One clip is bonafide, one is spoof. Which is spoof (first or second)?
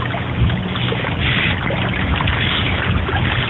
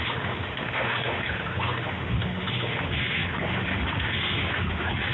second